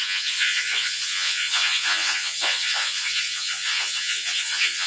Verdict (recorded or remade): remade